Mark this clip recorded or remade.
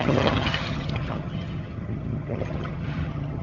remade